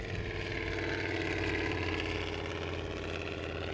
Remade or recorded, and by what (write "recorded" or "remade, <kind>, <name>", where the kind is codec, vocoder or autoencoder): recorded